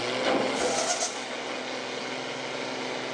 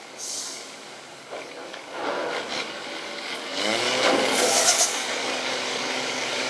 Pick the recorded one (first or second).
first